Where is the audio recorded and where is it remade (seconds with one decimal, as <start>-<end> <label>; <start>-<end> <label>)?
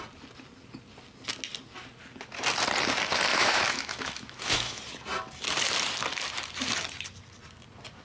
0.0-3.3 recorded; 3.3-4.8 remade; 4.8-8.0 recorded